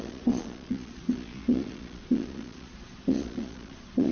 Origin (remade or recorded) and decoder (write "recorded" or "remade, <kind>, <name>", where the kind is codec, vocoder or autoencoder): remade, vocoder, Vocos